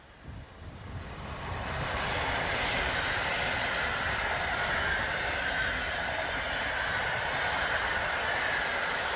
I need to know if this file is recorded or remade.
recorded